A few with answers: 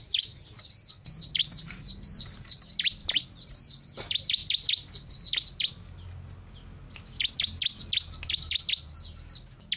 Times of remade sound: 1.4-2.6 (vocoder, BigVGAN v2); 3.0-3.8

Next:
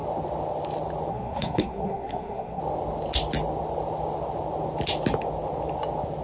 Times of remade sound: 1.1-2.6 (codec, SNAC)

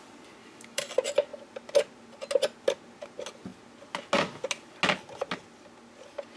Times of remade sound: 0.4-0.9 (autoencoder, DAC-VAE)

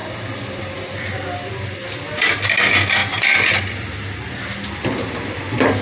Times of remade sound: none

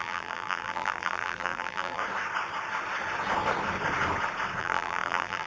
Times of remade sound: 0.0-2.0 (vocoder, BigVGAN v2); 4.6-5.5

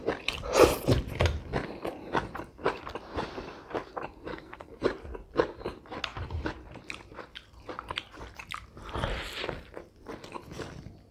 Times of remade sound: 4.3-4.8 (codec, SNAC)

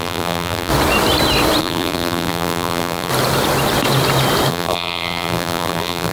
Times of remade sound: 0.0-0.7 (vocoder, BigVGAN v2); 1.6-3.1; 4.5-6.1